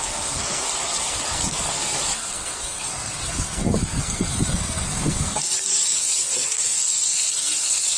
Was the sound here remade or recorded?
remade